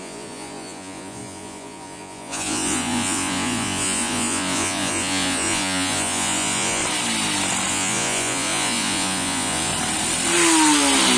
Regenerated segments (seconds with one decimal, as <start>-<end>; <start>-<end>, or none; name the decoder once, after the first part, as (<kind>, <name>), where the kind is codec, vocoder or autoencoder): 0.0-6.8 (vocoder, Vocos); 7.7-9.7